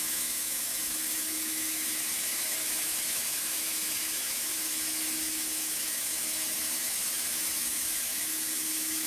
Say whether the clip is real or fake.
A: fake